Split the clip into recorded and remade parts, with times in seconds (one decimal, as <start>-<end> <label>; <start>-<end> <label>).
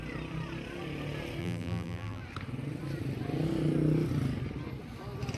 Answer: 0.0-1.4 recorded; 1.4-2.2 remade; 2.2-5.4 recorded